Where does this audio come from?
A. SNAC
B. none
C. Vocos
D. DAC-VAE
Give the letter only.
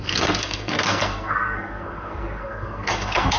A